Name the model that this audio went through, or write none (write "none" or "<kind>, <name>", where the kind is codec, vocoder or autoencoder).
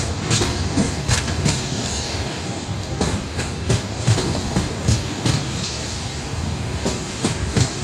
codec, DAC